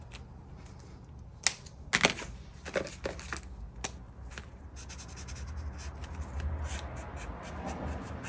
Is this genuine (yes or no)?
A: yes